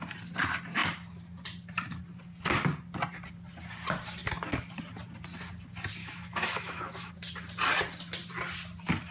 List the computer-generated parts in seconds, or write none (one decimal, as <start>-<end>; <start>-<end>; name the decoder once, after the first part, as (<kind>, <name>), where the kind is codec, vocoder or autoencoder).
6.0-7.1 (autoencoder, DAC-VAE)